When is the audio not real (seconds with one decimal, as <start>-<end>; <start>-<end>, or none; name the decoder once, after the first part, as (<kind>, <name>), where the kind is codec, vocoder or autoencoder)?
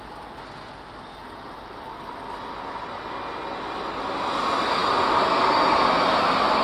none